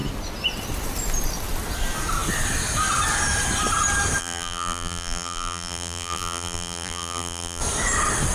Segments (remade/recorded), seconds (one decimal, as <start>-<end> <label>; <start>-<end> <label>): 0.0-4.2 recorded; 4.2-7.6 remade; 7.6-8.3 recorded